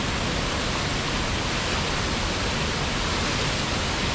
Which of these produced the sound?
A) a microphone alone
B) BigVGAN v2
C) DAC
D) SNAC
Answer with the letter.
A